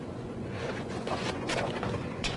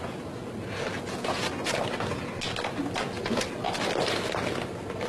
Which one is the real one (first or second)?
second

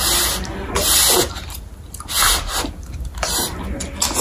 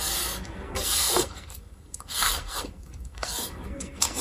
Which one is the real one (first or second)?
first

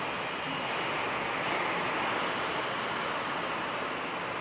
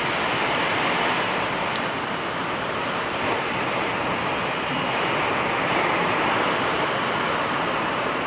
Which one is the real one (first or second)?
first